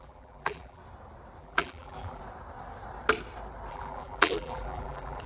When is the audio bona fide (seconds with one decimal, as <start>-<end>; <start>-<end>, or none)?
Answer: 0.8-1.4; 2.2-3.7